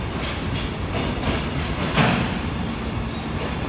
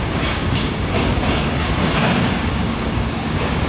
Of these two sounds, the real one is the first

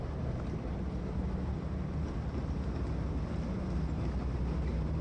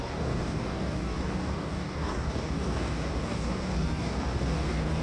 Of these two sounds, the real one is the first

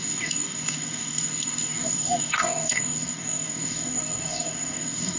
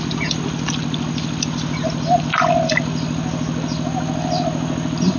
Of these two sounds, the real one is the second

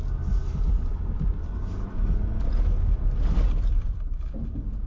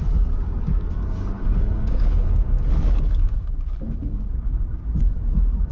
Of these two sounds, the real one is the first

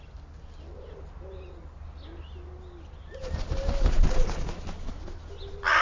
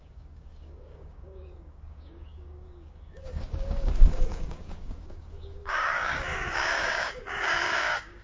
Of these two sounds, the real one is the first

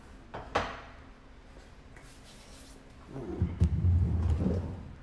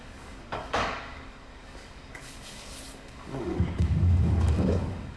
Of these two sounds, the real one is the first